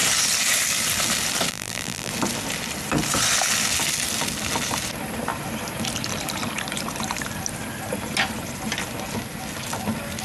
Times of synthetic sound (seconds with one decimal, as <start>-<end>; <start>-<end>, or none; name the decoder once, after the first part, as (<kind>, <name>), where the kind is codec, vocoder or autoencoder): 1.5-2.1 (vocoder, BigVGAN v2)